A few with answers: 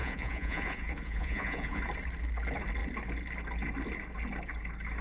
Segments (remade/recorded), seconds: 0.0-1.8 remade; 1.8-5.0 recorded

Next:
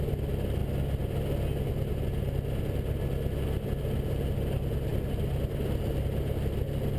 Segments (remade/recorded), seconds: 0.0-7.0 recorded

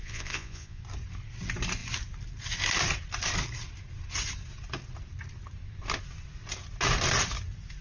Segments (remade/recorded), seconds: 0.0-0.8 remade; 0.8-7.8 recorded

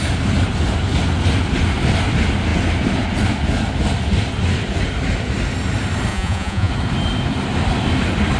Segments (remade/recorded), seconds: 0.0-6.1 recorded; 6.1-6.7 remade; 6.7-8.4 recorded

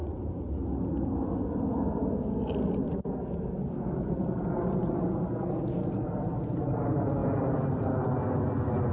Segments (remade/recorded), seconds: 0.0-8.9 recorded

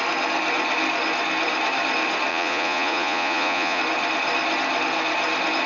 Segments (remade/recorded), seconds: 0.0-2.3 recorded; 2.3-3.8 remade; 3.8-5.7 recorded

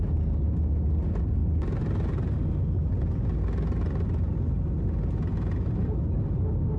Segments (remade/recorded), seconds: 0.0-6.8 recorded